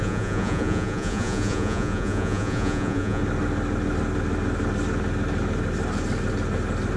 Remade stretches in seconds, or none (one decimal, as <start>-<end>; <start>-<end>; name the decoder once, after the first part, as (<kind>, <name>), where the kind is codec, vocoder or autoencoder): 0.0-3.2 (vocoder, Vocos)